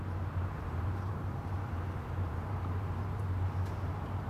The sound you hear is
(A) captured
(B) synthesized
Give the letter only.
B